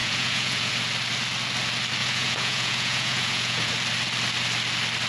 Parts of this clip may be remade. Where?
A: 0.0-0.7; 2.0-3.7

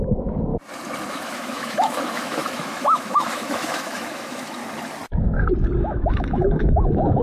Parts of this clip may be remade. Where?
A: 0.0-0.5; 1.1-4.6; 5.8-7.2

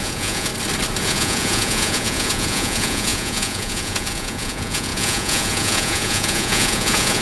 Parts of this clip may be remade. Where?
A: 0.0-0.5; 1.0-7.2

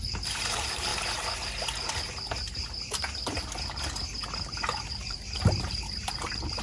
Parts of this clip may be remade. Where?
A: 0.0-0.9; 4.9-6.6

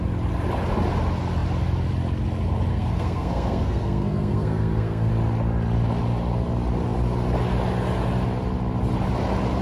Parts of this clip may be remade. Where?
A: 2.7-5.1